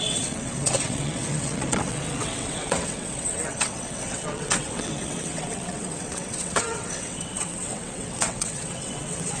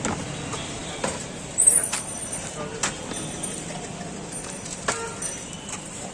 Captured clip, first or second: second